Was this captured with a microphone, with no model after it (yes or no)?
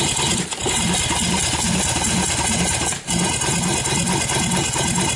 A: yes